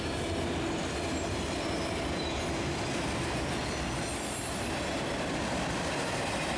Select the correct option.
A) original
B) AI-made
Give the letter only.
A